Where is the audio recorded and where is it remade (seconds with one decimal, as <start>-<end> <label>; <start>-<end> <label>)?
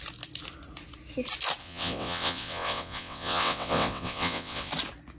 0.0-1.6 recorded; 1.6-4.7 remade; 4.7-5.2 recorded